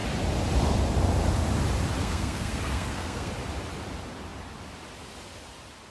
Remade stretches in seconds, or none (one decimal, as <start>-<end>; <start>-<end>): 2.0-3.3